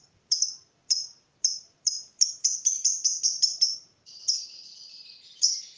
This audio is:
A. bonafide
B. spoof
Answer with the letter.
B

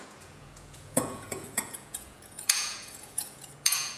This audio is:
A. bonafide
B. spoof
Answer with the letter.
B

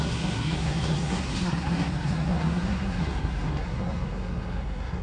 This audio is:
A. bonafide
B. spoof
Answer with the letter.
B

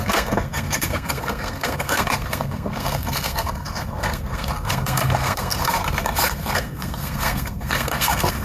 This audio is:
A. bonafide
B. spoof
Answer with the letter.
B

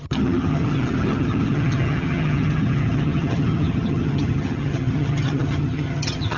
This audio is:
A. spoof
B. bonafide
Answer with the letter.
A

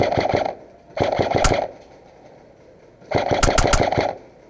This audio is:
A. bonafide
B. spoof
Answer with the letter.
A